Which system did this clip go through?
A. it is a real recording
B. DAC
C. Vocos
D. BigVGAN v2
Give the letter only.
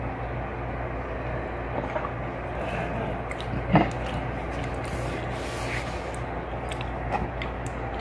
A